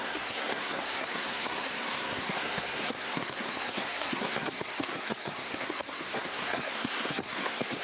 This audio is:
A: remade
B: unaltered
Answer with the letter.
A